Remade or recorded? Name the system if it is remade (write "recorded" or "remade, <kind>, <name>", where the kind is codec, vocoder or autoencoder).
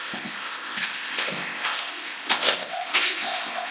remade, codec, ZipCodec